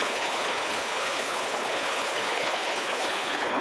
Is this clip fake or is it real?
fake